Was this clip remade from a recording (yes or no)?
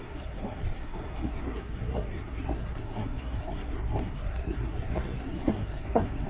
yes